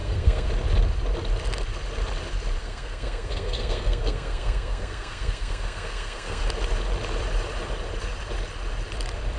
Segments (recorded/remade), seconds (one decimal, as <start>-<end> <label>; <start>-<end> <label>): 0.0-0.5 remade; 0.5-2.6 recorded; 2.6-6.4 remade; 6.4-9.4 recorded